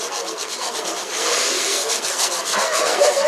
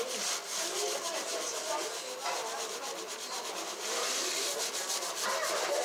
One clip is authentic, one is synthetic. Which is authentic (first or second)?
second